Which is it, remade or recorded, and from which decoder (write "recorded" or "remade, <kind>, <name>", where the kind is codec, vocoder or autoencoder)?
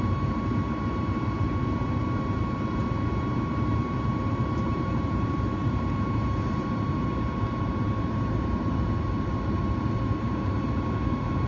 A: remade, vocoder, BigVGAN v2